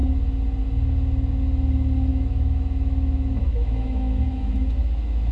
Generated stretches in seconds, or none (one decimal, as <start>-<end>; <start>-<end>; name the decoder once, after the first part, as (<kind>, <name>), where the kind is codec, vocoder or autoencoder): 2.1-5.3 (autoencoder, DAC-VAE)